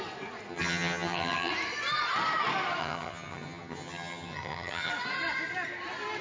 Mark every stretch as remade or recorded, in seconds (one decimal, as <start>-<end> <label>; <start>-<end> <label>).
0.0-0.5 recorded; 0.5-1.5 remade; 1.5-2.8 recorded; 2.8-4.9 remade; 4.9-6.2 recorded